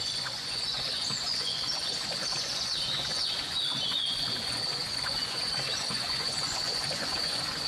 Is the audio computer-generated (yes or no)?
yes